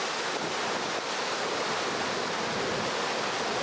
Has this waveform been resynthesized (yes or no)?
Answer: no